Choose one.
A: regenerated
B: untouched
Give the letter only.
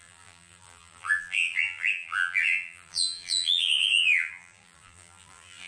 A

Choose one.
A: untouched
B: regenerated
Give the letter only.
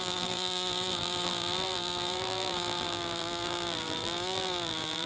B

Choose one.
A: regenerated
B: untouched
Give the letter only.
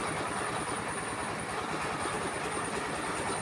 B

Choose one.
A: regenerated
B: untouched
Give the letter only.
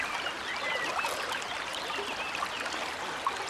B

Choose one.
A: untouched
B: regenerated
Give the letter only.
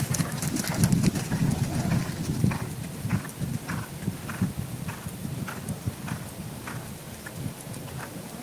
A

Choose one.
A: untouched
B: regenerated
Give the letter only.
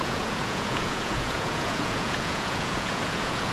B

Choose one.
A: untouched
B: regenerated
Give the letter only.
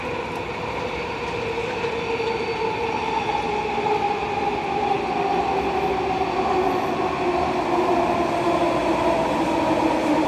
A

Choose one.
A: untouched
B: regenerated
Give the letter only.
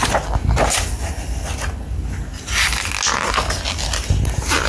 A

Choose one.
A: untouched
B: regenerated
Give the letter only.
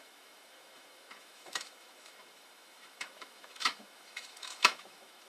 B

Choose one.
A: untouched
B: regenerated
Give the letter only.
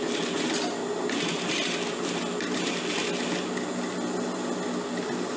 A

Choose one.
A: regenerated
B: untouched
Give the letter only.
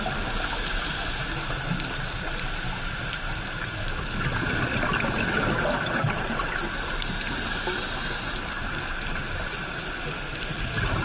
B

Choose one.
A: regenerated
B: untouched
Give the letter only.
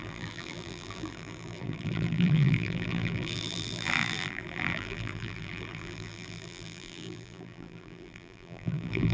A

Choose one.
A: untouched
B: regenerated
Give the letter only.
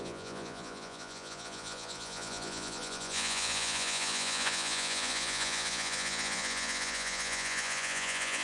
B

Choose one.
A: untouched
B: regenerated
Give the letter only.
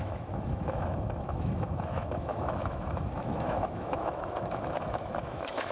B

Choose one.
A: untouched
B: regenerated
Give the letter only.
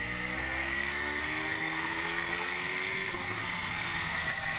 B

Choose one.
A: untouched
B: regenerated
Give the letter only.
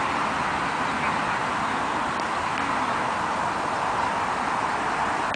A